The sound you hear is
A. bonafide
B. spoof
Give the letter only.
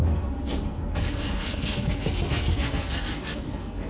B